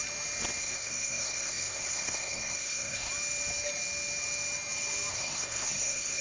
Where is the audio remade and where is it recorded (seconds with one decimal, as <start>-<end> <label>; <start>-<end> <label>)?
0.0-0.6 recorded; 0.6-3.1 remade; 3.1-5.1 recorded; 5.1-6.2 remade